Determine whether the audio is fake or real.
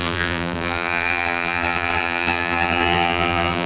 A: fake